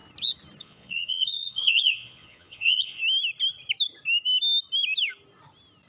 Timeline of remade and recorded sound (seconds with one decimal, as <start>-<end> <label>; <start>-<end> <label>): 0.0-0.6 recorded; 0.6-3.0 remade; 3.0-5.9 recorded